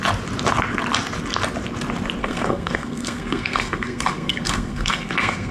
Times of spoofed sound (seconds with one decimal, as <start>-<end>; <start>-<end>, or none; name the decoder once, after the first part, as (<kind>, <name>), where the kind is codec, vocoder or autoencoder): 2.2-5.5 (codec, SNAC)